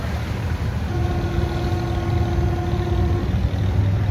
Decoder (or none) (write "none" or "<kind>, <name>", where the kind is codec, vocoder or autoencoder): none